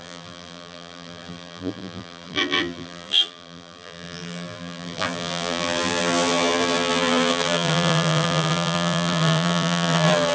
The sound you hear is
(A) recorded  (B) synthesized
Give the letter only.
B